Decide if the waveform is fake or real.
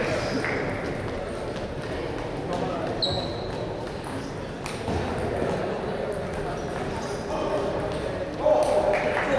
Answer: real